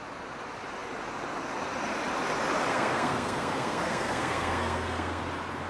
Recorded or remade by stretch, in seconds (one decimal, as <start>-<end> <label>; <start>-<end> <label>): 0.0-2.7 recorded; 2.7-5.2 remade; 5.2-5.7 recorded